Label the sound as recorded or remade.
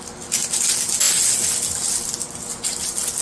recorded